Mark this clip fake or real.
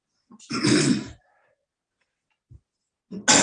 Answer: real